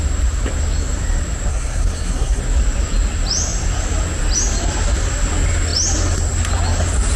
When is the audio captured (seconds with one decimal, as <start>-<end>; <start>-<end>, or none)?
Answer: 0.0-1.5; 2.4-7.2